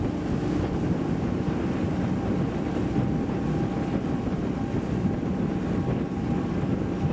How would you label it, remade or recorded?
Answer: recorded